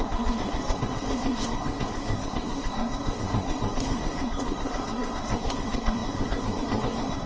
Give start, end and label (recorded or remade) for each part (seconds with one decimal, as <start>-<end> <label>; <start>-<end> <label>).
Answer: 0.0-7.3 remade